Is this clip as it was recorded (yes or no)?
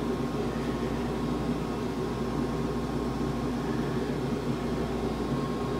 yes